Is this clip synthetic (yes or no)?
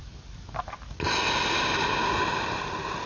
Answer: no